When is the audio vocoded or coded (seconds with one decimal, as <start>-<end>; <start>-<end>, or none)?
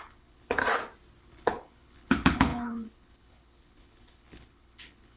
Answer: 0.0-0.6; 1.2-5.2